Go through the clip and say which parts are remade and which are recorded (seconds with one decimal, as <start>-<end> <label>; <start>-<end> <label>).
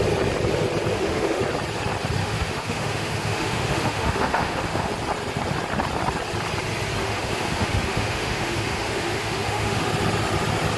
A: 0.0-0.9 recorded; 0.9-1.4 remade; 1.4-2.2 recorded; 2.2-4.9 remade; 4.9-7.0 recorded; 7.0-9.9 remade; 9.9-10.8 recorded